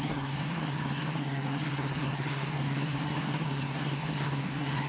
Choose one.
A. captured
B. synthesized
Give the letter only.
B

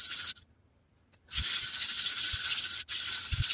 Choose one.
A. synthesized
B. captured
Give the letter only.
B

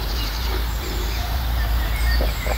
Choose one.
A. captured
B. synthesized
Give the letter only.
B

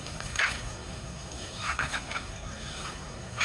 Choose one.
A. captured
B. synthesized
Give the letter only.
B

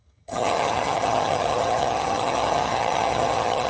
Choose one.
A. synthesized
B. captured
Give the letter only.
A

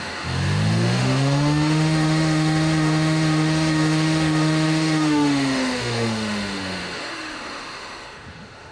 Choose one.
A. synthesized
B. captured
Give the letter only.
A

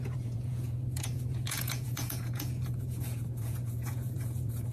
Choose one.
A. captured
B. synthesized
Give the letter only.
B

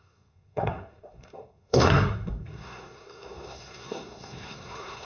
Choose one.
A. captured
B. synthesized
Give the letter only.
B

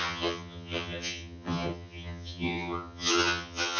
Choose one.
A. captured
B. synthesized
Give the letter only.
B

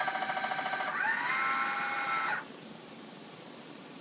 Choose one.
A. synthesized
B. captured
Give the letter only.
B